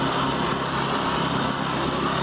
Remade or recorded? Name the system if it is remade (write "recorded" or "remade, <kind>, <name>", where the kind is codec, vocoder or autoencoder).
recorded